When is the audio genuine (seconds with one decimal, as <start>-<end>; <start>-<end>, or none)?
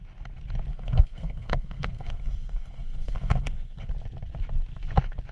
0.0-0.7; 3.9-5.3